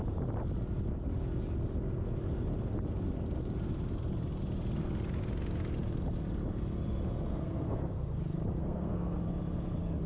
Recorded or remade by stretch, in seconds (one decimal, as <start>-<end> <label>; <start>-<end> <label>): 0.0-7.3 recorded; 7.3-8.2 remade; 8.2-8.6 recorded; 8.6-9.2 remade; 9.2-10.1 recorded